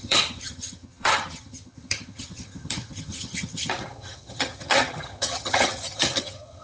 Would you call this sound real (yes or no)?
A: no